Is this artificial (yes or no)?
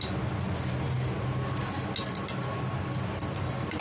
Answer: no